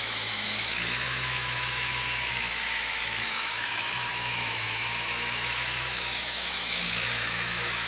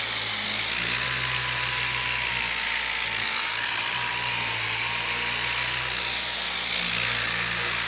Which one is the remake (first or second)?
first